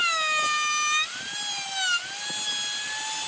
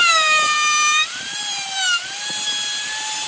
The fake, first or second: second